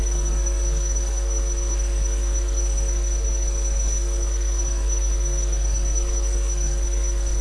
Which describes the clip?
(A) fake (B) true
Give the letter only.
A